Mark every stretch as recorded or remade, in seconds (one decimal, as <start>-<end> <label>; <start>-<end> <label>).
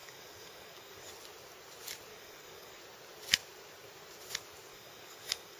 0.0-1.1 remade; 1.1-2.1 recorded; 2.1-2.8 remade; 2.8-4.7 recorded; 4.7-5.6 remade